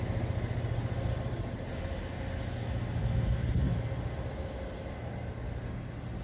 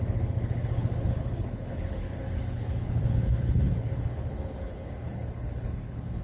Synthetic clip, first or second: second